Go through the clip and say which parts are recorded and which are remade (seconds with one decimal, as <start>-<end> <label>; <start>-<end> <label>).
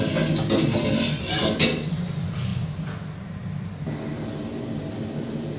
0.0-5.6 recorded